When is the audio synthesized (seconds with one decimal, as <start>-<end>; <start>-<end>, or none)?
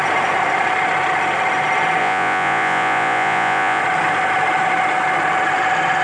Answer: 2.0-3.8